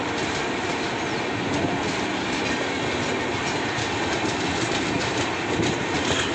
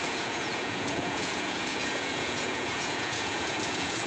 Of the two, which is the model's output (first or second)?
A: second